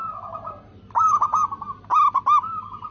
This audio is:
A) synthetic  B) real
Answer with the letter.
B